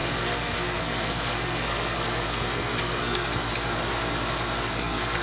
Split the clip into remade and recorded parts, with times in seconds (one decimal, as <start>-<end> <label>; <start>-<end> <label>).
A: 0.0-3.5 remade; 3.5-4.6 recorded; 4.6-5.2 remade